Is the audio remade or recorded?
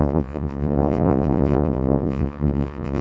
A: remade